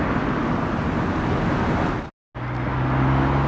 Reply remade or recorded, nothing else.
recorded